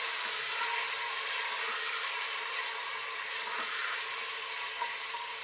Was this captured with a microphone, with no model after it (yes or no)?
yes